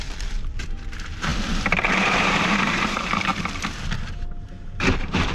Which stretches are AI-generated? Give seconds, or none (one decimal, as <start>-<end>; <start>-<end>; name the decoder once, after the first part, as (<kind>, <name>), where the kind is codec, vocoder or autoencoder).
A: 0.0-1.3 (vocoder, BigVGAN v2); 1.9-3.3; 4.5-5.3